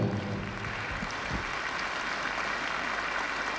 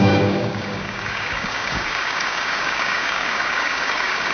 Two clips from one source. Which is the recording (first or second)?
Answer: first